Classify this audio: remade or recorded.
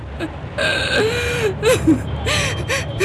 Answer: recorded